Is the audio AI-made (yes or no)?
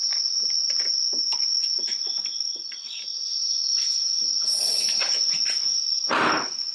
no